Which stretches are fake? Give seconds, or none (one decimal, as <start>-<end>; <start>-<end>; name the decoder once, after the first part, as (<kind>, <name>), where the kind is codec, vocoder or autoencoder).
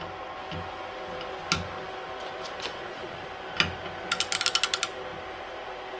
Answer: 2.7-3.3 (vocoder, Vocos)